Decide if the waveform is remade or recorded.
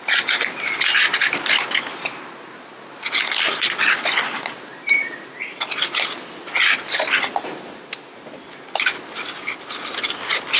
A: recorded